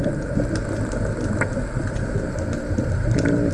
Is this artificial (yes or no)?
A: no